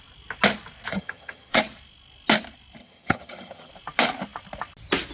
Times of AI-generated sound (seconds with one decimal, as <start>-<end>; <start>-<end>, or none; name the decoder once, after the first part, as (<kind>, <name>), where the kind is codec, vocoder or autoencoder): 0.9-1.6 (vocoder, HiFi-GAN); 2.8-3.7